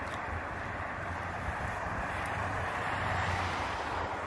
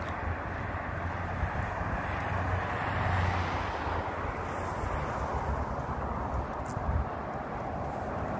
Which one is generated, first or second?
first